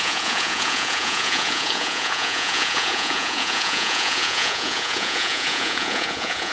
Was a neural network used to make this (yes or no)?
yes